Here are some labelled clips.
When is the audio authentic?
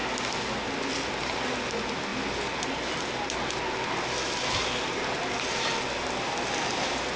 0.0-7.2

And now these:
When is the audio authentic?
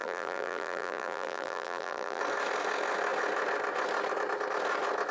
2.2-5.1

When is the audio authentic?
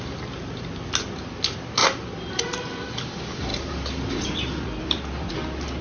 0.0-3.5; 5.3-5.8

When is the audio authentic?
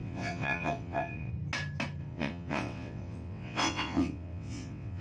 1.3-2.0